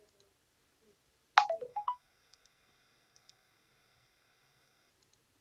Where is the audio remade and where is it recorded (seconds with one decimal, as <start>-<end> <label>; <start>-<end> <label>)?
0.0-1.7 recorded; 1.7-4.9 remade; 4.9-5.4 recorded